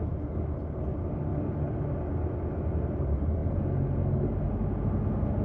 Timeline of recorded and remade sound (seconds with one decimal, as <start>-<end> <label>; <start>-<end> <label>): 0.0-5.4 recorded